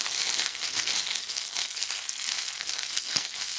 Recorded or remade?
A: remade